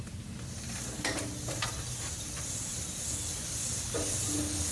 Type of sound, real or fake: fake